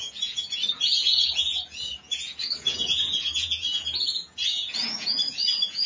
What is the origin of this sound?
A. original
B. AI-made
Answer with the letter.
B